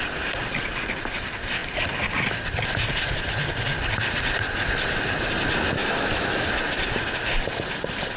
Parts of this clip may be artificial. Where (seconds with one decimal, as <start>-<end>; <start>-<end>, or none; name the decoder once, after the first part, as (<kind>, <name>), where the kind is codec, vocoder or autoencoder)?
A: 5.8-6.5 (autoencoder, DAC-VAE)